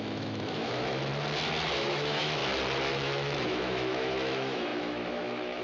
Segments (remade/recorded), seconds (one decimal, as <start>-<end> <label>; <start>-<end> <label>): 0.0-1.1 remade; 1.1-1.7 recorded; 1.7-2.4 remade; 2.4-2.9 recorded; 2.9-5.6 remade